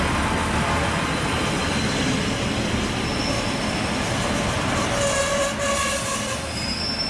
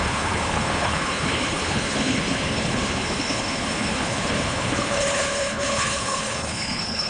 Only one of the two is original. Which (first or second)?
first